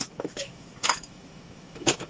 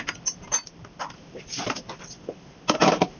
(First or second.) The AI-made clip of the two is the first